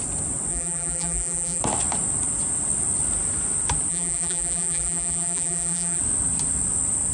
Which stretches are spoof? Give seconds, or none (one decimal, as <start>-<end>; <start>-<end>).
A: 0.5-1.6; 3.9-6.0